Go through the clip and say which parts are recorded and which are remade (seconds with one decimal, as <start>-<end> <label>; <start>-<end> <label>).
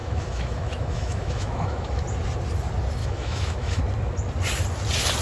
0.0-2.0 remade; 2.0-3.0 recorded; 3.0-3.8 remade; 3.8-5.2 recorded